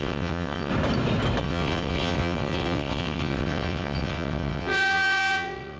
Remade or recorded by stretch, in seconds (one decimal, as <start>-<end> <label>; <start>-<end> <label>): 0.0-0.7 remade; 0.7-1.4 recorded; 1.4-5.8 remade